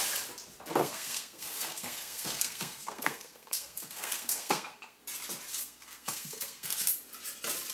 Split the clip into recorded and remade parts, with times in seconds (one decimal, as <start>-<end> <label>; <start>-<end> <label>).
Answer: 0.0-0.8 recorded; 0.8-5.0 remade; 5.0-5.5 recorded; 5.5-6.9 remade; 6.9-7.7 recorded